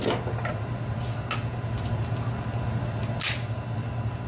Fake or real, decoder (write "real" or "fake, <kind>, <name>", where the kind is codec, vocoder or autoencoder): real